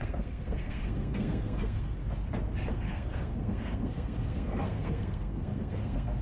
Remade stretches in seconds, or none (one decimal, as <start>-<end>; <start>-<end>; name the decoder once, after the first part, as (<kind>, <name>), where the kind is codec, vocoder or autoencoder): 0.0-2.0 (codec, SNAC); 2.7-6.2